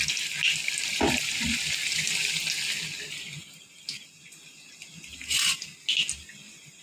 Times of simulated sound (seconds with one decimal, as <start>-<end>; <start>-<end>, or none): none